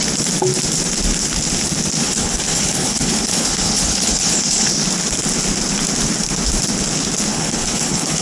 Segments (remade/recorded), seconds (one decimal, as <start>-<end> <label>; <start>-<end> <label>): 0.0-2.0 recorded; 2.0-4.7 remade; 4.7-7.3 recorded; 7.3-8.2 remade